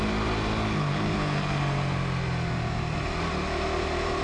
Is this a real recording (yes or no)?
yes